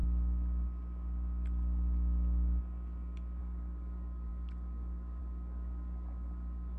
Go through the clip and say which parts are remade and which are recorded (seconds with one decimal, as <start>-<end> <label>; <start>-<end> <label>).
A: 0.0-3.4 recorded; 3.4-6.8 remade